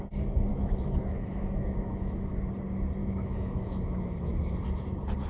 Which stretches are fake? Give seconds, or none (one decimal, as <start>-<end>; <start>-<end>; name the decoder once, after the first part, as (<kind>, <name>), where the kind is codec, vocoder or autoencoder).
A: 0.5-2.3 (autoencoder, DAC-VAE); 3.0-4.4